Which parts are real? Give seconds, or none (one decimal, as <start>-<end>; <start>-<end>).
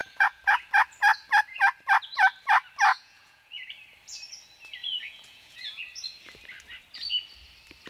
0.7-2.9; 3.7-4.8; 5.8-7.9